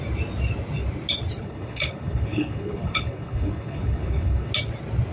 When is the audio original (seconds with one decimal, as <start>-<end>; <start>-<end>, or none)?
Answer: 0.0-1.4; 4.5-5.1